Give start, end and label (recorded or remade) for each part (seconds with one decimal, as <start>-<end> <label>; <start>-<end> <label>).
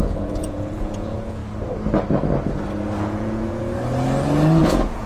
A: 0.0-1.4 remade; 1.4-3.0 recorded; 3.0-3.6 remade; 3.6-4.6 recorded; 4.6-5.1 remade